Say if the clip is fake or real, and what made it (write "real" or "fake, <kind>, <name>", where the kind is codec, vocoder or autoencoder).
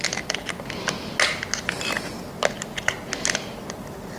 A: real